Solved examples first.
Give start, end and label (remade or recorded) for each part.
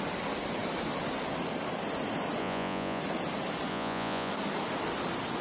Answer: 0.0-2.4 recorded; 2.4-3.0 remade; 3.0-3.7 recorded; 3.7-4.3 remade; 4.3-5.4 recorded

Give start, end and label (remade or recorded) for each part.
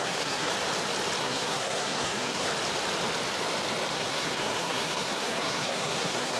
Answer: 0.0-0.5 remade; 0.5-1.2 recorded; 1.2-2.5 remade; 2.5-3.9 recorded; 3.9-6.4 remade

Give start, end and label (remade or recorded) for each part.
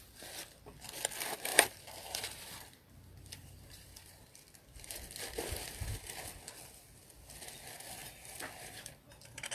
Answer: 0.0-1.5 recorded; 1.5-5.5 remade; 5.5-8.0 recorded; 8.0-9.5 remade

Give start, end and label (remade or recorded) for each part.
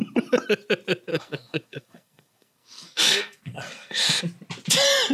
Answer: 0.0-1.1 recorded; 1.1-4.2 remade; 4.2-5.1 recorded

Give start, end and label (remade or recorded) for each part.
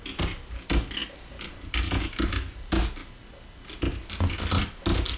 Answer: 0.0-5.2 recorded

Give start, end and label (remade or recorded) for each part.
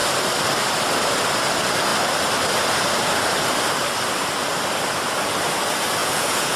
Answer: 0.0-6.0 recorded; 6.0-6.6 remade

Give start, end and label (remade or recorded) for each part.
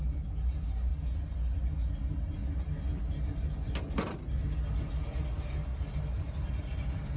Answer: 0.0-7.2 recorded